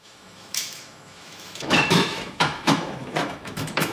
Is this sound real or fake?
fake